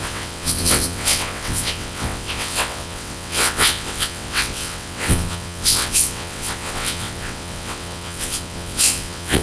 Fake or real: fake